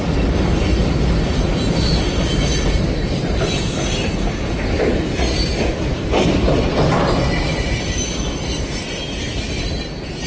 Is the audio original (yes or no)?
yes